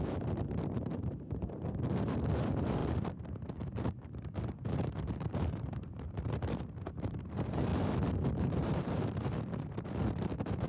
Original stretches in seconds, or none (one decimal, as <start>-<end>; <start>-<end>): 7.7-8.3